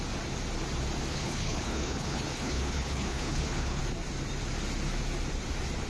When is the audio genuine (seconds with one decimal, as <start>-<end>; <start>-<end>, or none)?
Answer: 0.0-1.1; 3.8-5.9